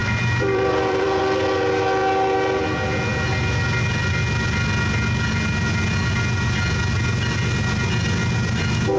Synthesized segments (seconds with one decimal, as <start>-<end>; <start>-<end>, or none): 0.0-1.2